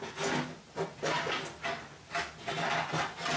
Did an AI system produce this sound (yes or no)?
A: no